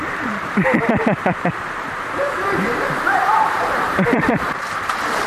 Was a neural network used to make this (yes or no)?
yes